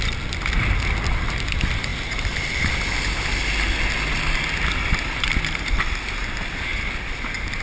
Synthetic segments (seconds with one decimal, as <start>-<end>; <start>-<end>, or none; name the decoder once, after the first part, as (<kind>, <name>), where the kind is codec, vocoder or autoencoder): none